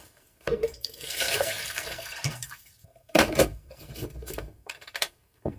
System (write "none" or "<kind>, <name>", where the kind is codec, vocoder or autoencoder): codec, SNAC